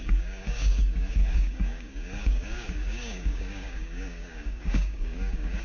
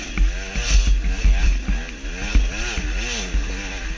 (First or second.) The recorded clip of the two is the second